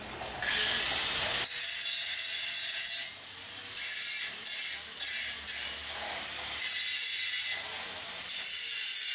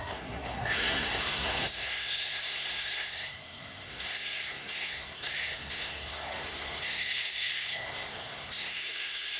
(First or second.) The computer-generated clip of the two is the second